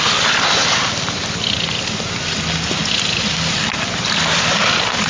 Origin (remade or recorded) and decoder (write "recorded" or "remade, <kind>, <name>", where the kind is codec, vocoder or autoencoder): recorded